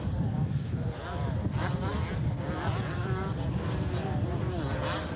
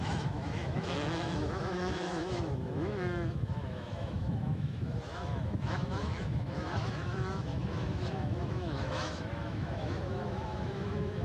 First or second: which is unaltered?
first